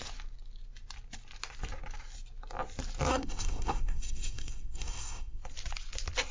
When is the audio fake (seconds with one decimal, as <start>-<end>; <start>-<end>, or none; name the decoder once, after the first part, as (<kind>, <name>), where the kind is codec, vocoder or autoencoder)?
3.1-5.4 (codec, SNAC)

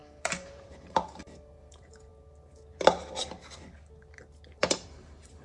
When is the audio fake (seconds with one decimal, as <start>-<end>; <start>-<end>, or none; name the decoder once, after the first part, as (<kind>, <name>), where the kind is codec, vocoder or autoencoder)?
0.0-2.1 (vocoder, BigVGAN v2); 4.6-5.4

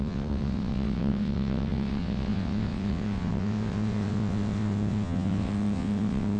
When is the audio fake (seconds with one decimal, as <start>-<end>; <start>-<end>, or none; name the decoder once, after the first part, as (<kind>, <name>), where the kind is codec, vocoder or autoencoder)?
0.0-6.4 (vocoder, WaveNeXt)

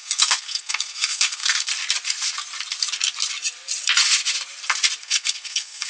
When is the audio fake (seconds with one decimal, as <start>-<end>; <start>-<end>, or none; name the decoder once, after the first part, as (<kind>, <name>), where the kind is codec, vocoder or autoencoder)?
0.0-1.7 (codec, SNAC); 5.0-5.9

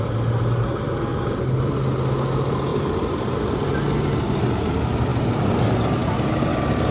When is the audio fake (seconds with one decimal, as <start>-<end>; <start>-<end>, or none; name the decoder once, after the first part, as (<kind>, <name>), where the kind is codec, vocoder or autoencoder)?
1.1-1.7 (vocoder, BigVGAN v2); 2.7-3.6; 5.1-5.6

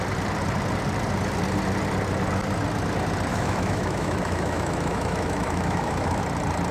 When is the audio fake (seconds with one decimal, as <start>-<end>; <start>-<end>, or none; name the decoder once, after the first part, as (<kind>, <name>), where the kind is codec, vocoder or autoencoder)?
3.3-6.2 (autoencoder, DAC-VAE)